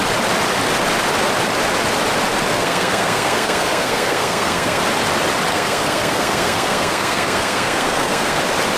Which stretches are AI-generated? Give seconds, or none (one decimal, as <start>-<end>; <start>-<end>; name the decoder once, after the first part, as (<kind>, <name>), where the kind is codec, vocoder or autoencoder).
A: 2.5-4.8 (codec, SNAC); 5.5-8.4